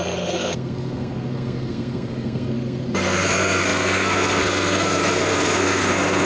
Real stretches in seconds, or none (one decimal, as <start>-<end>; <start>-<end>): none